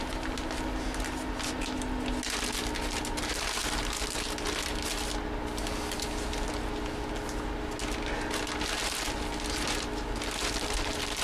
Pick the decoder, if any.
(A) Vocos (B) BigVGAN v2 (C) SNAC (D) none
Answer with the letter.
D